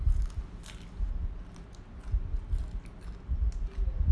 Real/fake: real